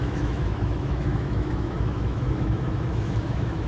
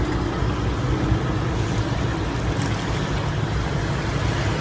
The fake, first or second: first